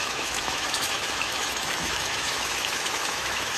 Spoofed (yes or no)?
yes